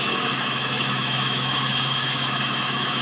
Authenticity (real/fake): fake